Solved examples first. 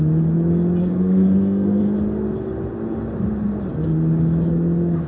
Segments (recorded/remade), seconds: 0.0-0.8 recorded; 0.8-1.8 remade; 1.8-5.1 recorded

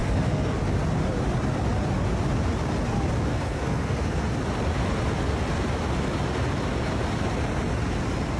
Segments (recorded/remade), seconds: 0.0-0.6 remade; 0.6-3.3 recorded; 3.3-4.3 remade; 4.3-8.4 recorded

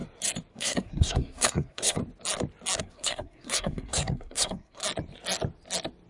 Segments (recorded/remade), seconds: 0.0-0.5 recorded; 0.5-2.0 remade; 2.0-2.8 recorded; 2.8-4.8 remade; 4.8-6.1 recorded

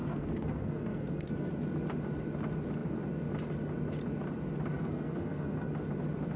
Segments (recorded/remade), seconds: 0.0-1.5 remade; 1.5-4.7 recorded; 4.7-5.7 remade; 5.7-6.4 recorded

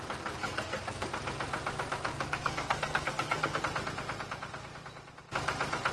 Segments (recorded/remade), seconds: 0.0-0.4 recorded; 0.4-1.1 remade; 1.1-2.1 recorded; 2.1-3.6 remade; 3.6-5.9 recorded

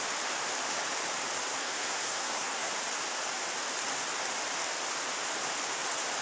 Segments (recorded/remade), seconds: 0.0-1.5 recorded; 1.5-2.7 remade; 2.7-6.2 recorded